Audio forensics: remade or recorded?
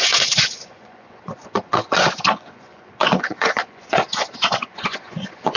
remade